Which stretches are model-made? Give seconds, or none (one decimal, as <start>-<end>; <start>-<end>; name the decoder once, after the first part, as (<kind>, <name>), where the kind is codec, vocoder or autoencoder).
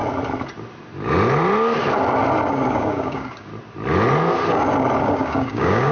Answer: 2.5-3.5 (codec, DAC); 5.0-5.9